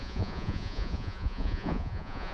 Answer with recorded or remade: remade